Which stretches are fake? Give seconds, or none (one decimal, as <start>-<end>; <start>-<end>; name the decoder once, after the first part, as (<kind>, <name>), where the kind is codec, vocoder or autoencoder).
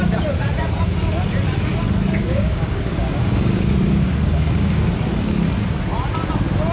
2.2-4.8 (codec, DAC)